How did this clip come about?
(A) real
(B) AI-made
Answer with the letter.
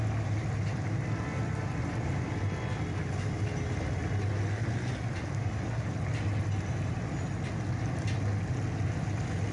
A